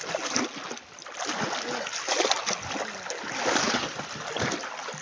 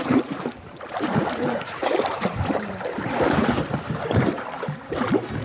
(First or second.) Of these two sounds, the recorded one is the first